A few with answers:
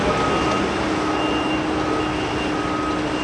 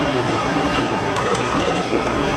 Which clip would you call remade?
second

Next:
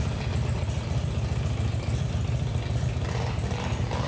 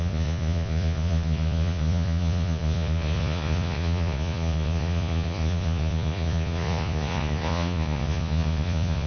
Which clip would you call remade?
second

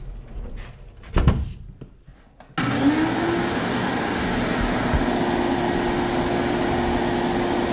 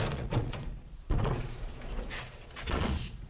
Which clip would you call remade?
second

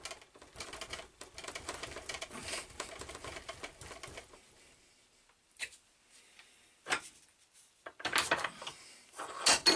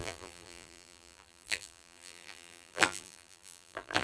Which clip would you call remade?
second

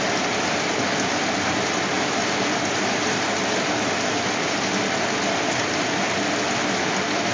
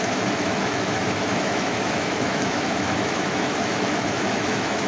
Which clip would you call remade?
second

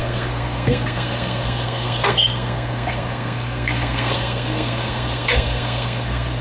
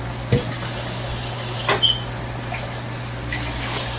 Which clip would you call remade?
first